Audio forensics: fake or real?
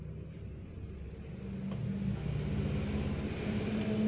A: real